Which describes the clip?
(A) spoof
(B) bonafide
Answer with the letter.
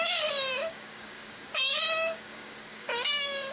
A